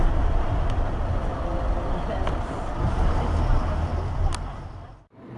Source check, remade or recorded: recorded